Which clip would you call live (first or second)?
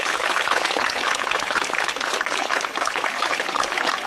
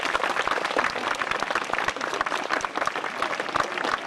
second